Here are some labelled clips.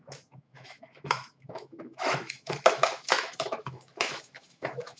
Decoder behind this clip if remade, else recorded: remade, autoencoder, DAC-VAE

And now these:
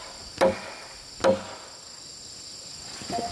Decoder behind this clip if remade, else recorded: recorded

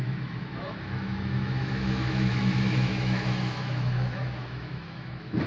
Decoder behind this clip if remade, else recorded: remade, autoencoder, DAC-VAE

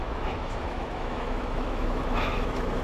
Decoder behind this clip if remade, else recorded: remade, autoencoder, DAC-VAE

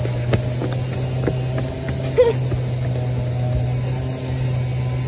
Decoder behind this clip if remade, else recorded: recorded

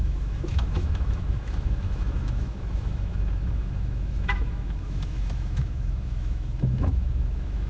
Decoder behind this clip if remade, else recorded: remade, autoencoder, DAC-VAE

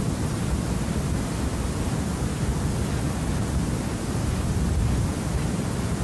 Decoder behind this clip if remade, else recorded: recorded